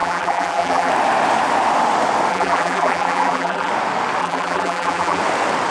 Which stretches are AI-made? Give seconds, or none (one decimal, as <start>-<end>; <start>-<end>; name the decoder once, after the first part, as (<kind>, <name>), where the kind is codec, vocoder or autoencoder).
0.0-0.9 (vocoder, BigVGAN v2); 2.3-3.7; 4.2-5.2